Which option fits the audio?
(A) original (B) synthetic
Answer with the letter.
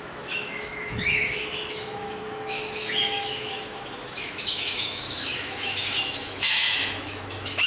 B